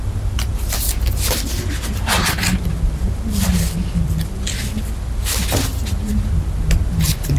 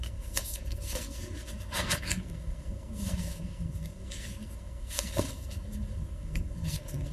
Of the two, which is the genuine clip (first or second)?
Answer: first